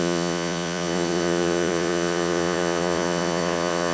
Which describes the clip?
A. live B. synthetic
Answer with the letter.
B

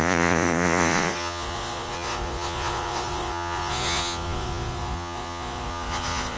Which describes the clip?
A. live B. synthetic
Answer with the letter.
B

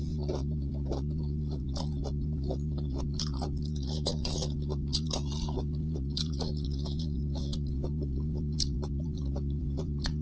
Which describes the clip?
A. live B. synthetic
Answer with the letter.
B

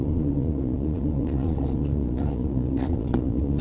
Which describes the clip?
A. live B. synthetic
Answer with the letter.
B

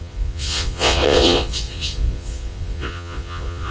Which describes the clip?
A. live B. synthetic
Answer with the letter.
B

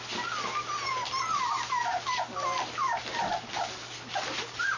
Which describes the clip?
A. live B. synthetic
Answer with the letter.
A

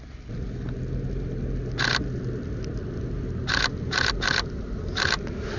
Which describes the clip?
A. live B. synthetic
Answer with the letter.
A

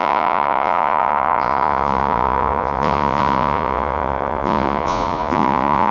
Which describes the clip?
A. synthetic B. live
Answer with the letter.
A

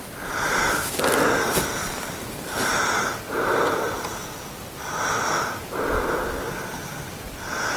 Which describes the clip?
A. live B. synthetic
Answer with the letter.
A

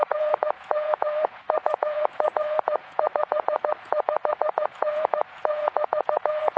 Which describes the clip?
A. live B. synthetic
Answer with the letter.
B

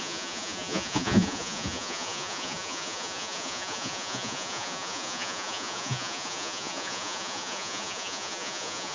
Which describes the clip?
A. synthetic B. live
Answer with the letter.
A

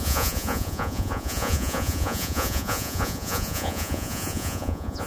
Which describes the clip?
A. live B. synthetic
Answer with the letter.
B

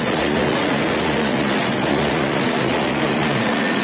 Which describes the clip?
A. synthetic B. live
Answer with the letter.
A